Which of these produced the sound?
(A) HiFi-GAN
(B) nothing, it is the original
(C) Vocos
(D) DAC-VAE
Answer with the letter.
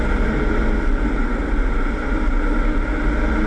B